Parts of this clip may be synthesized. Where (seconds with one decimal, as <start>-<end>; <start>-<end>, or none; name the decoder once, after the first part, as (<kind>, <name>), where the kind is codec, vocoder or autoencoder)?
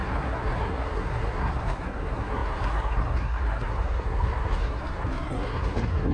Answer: 0.0-6.1 (codec, SNAC)